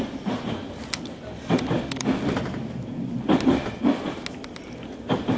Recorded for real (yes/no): yes